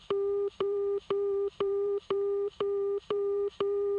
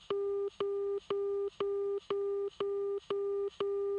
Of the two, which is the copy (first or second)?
first